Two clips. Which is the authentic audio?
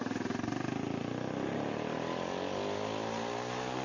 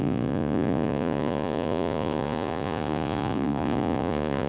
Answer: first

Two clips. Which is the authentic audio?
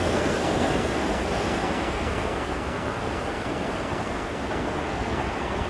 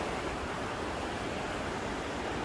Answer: second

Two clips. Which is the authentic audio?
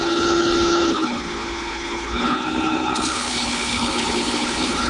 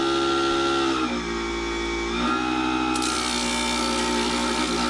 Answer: second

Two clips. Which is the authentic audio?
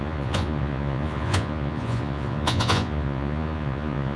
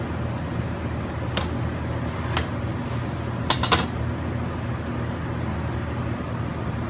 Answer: second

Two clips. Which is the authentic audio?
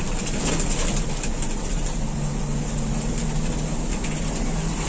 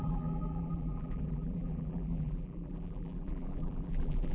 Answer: first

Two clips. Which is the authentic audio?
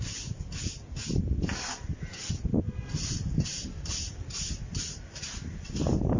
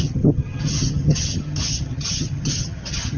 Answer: first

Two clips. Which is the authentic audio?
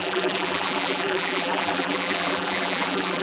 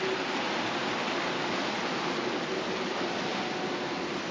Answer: second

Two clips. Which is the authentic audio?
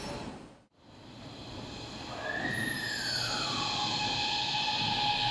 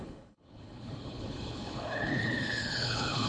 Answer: first